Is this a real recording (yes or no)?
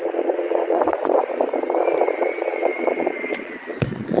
no